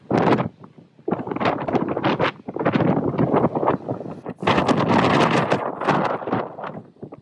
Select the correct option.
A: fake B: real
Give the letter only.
B